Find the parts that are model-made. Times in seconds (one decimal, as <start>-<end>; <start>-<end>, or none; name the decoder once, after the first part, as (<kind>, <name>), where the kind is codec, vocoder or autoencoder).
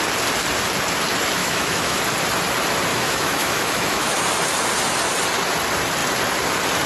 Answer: 1.4-2.0 (autoencoder, DAC-VAE); 2.9-4.1